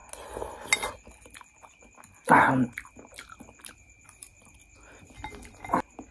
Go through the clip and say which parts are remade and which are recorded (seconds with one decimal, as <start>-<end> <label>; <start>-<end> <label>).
0.0-6.1 recorded